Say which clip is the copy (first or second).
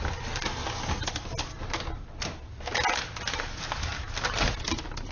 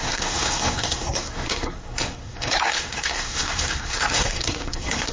second